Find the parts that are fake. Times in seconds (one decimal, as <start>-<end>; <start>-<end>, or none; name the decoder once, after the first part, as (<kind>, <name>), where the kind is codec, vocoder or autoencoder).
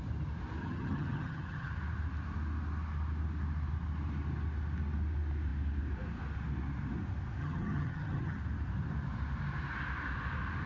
0.6-1.7 (vocoder, HiFi-GAN); 7.4-8.4